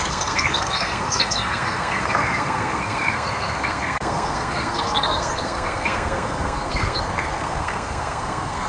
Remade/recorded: remade